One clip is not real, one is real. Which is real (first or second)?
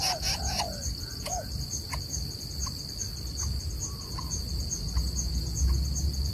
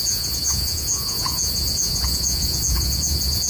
first